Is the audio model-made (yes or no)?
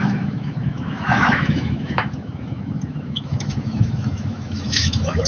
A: yes